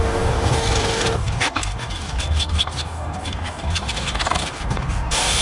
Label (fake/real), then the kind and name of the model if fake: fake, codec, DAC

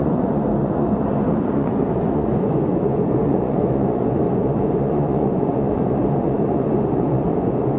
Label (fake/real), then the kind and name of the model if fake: fake, vocoder, Vocos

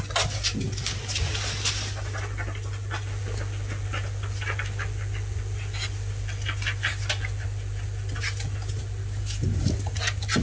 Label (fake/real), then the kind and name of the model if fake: real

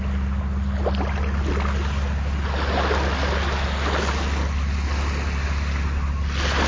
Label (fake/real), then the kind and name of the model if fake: real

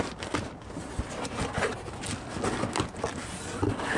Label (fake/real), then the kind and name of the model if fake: real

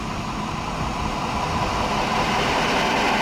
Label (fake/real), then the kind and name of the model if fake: real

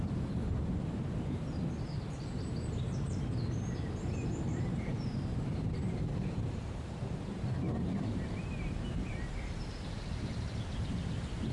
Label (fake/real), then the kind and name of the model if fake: fake, vocoder, BigVGAN v2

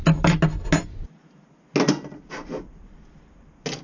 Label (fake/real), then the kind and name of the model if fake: real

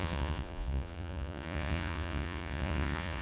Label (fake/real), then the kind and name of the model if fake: fake, vocoder, Vocos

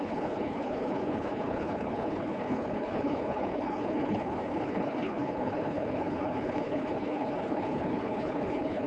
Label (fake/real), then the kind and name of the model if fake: fake, codec, HILCodec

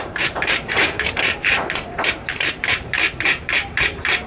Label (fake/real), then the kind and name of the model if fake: fake, vocoder, BigVGAN v2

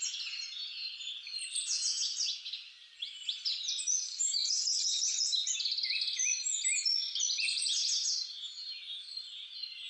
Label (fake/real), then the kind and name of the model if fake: real